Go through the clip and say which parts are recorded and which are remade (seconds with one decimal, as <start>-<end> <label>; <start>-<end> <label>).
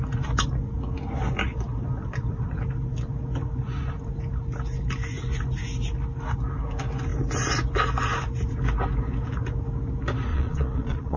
0.0-10.3 recorded; 10.3-11.2 remade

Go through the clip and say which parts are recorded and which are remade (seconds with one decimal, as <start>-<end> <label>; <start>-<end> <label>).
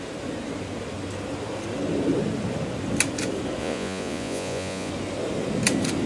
0.0-3.6 recorded; 3.6-4.9 remade; 4.9-6.1 recorded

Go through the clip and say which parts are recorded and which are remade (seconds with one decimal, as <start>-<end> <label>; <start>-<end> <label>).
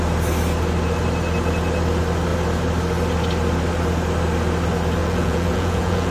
0.0-5.0 recorded; 5.0-6.1 remade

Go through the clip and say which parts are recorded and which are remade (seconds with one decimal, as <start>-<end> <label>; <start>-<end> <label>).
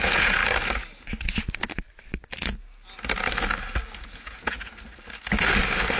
0.0-0.4 remade; 0.4-4.0 recorded; 4.0-4.7 remade; 4.7-6.0 recorded